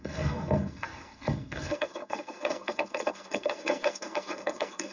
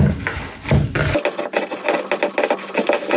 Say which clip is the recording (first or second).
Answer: second